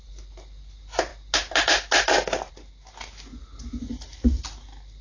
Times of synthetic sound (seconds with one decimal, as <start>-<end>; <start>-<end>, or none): none